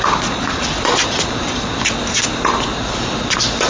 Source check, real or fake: real